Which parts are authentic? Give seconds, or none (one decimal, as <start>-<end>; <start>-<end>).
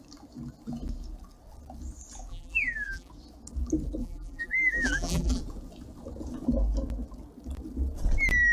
0.0-2.3; 3.1-4.0; 5.4-8.5